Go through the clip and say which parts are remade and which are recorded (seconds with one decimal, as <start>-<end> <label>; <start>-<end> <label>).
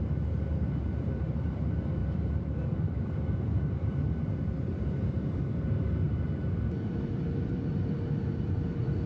0.0-9.1 remade